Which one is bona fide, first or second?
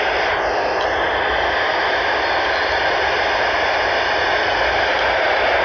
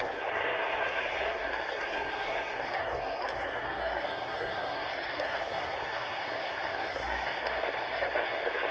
first